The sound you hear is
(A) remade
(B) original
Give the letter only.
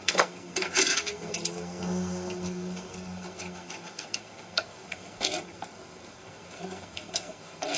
A